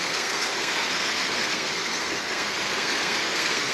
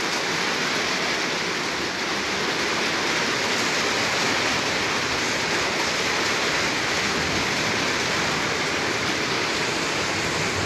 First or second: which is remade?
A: first